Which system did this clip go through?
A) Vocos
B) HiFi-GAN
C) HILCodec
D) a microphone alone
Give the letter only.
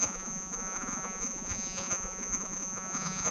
A